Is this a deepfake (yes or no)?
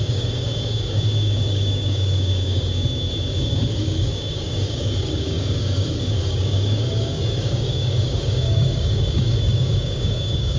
yes